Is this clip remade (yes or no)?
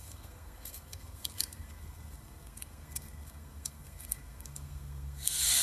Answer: yes